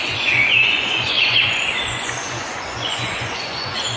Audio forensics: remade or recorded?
remade